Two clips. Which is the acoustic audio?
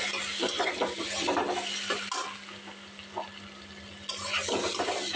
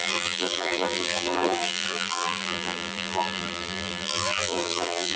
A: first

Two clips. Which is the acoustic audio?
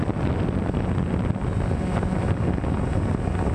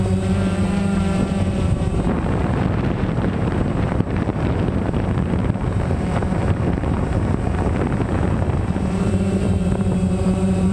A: first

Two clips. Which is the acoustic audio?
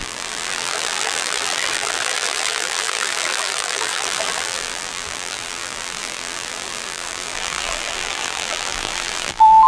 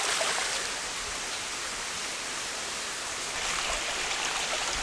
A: second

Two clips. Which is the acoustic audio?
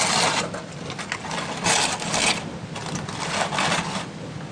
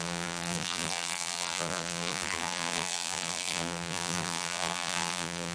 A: first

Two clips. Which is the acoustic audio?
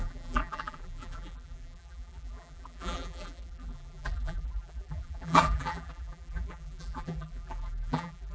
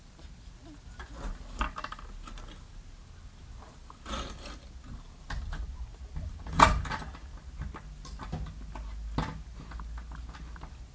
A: second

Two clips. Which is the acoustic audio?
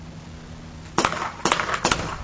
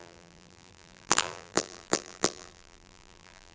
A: first